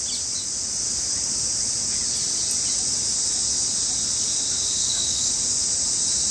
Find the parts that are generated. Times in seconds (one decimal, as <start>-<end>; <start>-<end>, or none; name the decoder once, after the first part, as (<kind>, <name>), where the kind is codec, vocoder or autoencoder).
4.8-5.3 (codec, DAC)